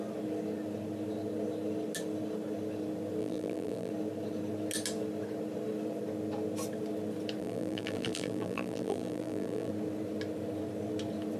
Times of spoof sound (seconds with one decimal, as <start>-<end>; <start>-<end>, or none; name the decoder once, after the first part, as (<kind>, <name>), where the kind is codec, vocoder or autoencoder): 3.2-3.9 (vocoder, BigVGAN v2); 7.4-9.7